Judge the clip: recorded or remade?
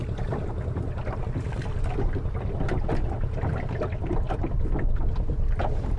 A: recorded